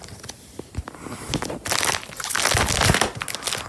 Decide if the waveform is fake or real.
real